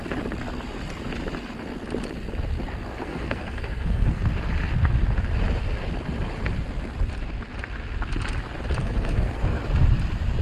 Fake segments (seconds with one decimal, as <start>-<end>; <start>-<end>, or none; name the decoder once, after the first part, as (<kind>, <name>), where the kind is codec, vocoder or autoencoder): 3.0-4.2 (codec, SNAC); 8.8-9.6